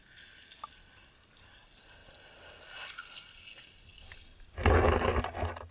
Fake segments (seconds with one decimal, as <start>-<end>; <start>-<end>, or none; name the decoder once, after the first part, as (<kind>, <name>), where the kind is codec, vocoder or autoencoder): none